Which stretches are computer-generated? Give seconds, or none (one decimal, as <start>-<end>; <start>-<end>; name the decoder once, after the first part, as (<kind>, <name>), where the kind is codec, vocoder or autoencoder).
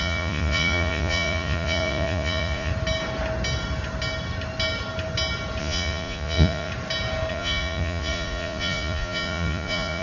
0.0-2.7 (vocoder, Vocos); 5.6-6.7; 7.3-10.0